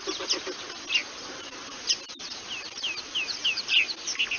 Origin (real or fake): real